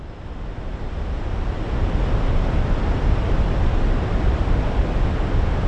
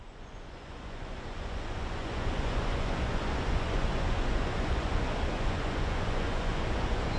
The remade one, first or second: second